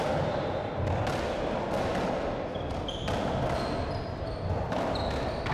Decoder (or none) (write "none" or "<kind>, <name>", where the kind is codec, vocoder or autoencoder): none